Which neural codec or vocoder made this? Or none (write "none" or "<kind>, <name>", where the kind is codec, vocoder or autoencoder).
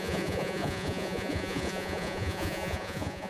vocoder, Vocos